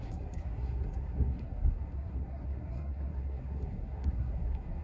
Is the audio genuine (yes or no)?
no